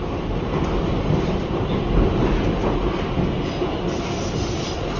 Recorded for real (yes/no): yes